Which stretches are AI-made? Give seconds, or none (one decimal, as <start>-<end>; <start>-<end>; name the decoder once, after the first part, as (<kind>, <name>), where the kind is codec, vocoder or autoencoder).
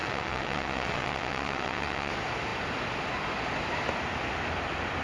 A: 0.0-2.1 (vocoder, WaveNeXt)